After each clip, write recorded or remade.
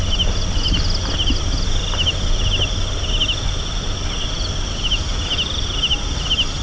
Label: recorded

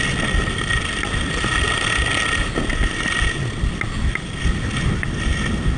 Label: recorded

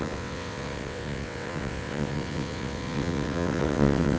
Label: remade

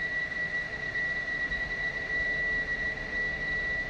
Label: recorded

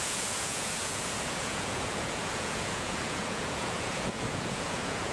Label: remade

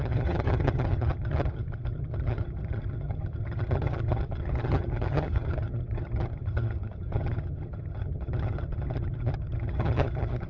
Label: remade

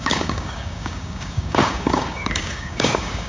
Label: remade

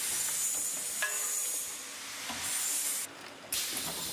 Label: recorded